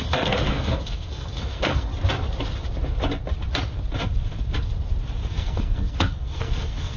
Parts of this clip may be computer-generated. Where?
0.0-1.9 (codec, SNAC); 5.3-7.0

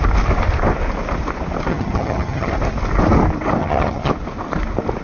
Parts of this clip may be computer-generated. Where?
1.7-2.5 (vocoder, HiFi-GAN); 3.6-4.1

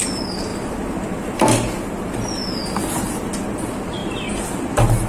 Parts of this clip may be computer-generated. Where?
none

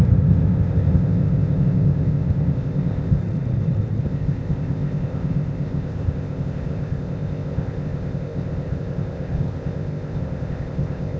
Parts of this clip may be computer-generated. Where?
0.0-3.2 (codec, ZipCodec); 4.0-11.2

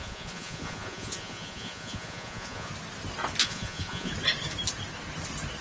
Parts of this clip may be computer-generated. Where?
0.0-2.7 (vocoder, Vocos); 3.4-4.1

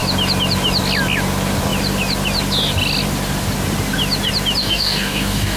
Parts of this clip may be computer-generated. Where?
4.6-5.6 (codec, DAC)